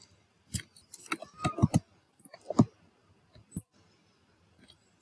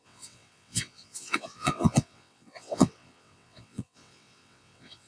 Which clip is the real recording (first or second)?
first